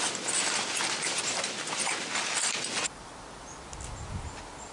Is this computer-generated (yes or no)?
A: no